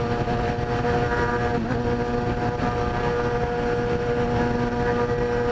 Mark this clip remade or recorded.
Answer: recorded